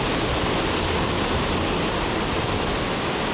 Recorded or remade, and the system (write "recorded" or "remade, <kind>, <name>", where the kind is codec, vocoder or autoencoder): recorded